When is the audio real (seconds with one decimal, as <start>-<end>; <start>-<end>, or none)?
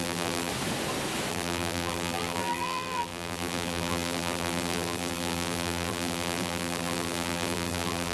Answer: 0.5-1.3